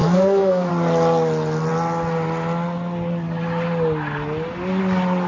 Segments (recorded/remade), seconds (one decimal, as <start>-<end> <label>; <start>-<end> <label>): 0.0-0.7 remade; 0.7-5.3 recorded